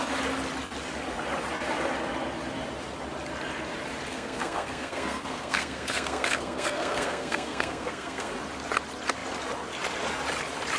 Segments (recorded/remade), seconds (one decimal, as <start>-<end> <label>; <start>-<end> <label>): 0.0-4.1 recorded; 4.1-8.3 remade; 8.3-10.8 recorded